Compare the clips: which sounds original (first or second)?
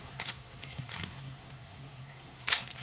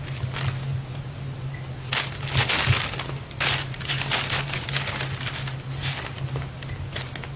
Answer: second